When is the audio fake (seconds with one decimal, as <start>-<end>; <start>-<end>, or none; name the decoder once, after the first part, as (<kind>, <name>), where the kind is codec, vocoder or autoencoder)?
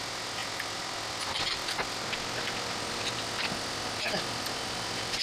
none